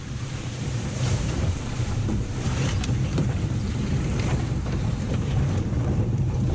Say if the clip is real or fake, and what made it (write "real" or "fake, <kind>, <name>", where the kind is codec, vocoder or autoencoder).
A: fake, vocoder, BigVGAN v2